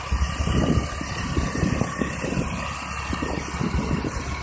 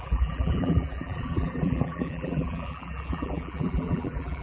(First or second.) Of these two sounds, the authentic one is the first